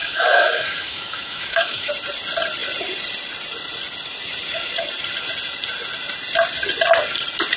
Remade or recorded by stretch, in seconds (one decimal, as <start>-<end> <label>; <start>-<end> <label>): 0.0-1.9 remade; 1.9-7.6 recorded